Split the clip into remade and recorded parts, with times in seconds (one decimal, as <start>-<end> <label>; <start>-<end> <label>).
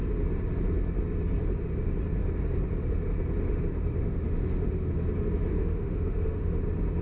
0.0-4.0 recorded; 4.0-4.9 remade; 4.9-5.5 recorded; 5.5-6.6 remade; 6.6-7.0 recorded